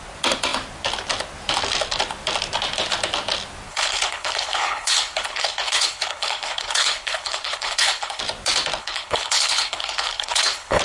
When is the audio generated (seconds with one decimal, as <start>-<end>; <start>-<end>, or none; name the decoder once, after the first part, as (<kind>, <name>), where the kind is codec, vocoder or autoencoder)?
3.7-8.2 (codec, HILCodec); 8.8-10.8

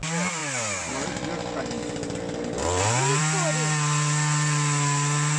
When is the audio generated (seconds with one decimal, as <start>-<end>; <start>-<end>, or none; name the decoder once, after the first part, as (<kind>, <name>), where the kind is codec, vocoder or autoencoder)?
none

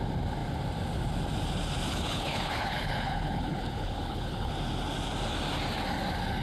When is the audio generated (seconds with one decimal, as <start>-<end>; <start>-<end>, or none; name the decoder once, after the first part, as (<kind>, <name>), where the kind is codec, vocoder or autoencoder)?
1.9-4.5 (codec, HILCodec)

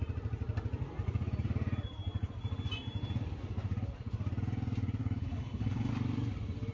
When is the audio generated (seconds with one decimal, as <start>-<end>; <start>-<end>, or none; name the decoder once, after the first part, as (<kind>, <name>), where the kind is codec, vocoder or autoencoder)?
5.0-5.9 (codec, HILCodec)

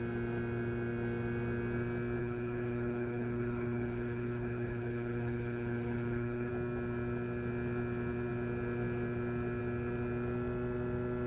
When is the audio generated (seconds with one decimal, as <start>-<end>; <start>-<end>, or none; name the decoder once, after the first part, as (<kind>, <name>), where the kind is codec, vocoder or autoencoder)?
2.2-6.5 (codec, HILCodec)

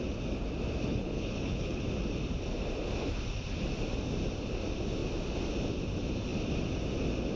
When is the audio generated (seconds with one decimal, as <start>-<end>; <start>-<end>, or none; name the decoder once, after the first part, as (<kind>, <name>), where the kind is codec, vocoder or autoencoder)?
0.9-1.8 (codec, HILCodec)

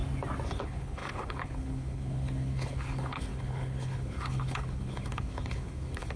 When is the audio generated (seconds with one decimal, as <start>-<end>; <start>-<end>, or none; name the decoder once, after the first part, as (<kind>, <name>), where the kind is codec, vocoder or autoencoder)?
0.6-6.2 (codec, HILCodec)